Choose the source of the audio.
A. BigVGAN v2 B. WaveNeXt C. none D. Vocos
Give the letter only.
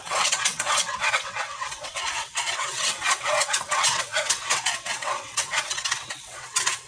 B